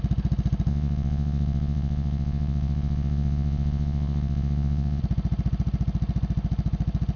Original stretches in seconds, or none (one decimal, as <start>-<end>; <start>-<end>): 0.0-0.7; 5.0-7.2